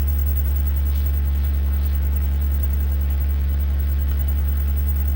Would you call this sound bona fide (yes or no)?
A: no